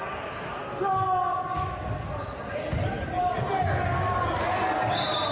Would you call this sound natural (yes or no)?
yes